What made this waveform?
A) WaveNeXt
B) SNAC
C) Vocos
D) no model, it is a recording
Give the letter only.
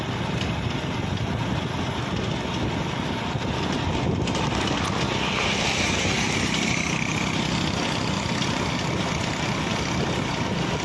D